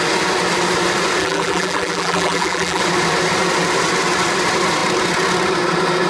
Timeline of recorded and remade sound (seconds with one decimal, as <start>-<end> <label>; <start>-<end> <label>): 0.0-1.2 recorded; 1.2-2.8 remade; 2.8-6.1 recorded